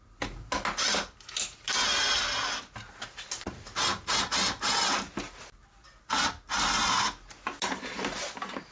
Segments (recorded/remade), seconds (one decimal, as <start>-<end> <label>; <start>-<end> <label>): 0.0-8.7 recorded

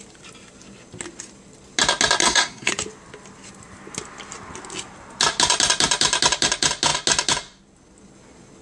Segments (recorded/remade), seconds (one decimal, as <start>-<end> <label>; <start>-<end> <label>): 0.0-2.2 recorded; 2.2-2.7 remade; 2.7-8.6 recorded

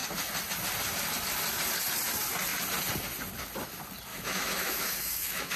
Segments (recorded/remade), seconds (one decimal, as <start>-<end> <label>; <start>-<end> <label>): 0.0-4.1 recorded; 4.1-5.6 remade

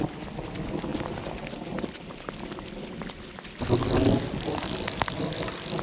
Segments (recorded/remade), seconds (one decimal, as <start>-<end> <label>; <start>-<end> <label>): 0.0-5.8 recorded